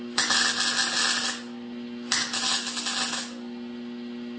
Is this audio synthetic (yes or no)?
no